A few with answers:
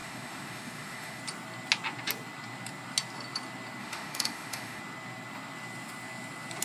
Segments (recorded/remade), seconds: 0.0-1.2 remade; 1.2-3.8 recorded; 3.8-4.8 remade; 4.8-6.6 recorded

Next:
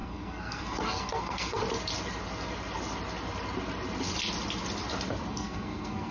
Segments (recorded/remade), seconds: 0.0-1.6 remade; 1.6-5.3 recorded; 5.3-6.1 remade

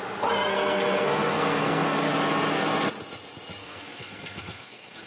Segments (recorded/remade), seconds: 0.0-0.5 recorded; 0.5-2.1 remade; 2.1-3.6 recorded; 3.6-5.1 remade

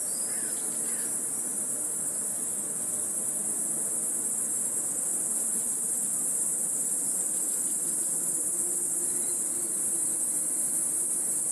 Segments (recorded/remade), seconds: 0.0-11.5 recorded

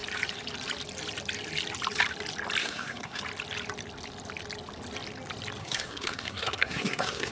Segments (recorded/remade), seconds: 0.0-2.6 recorded; 2.6-3.2 remade; 3.2-5.6 recorded; 5.6-7.3 remade

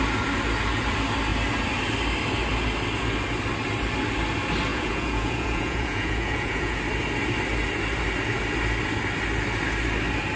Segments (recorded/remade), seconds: 0.0-4.7 recorded; 4.7-6.8 remade; 6.8-10.4 recorded